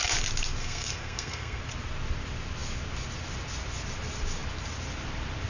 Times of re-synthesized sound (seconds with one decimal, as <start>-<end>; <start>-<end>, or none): 0.6-1.6